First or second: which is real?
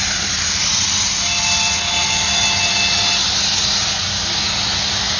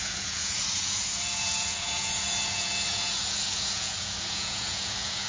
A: first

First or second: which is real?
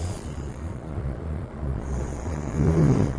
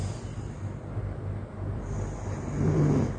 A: second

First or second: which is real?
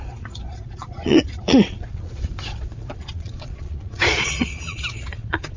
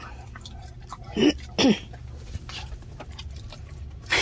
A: second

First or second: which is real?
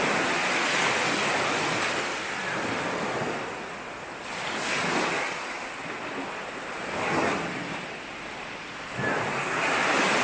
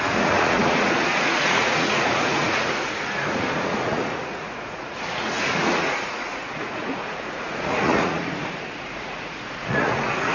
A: first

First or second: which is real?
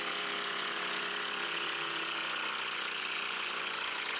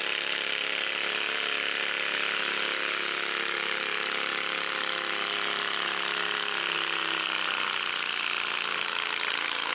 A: second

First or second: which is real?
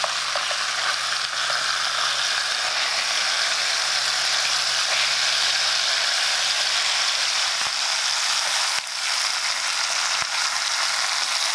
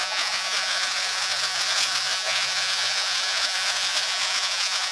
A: first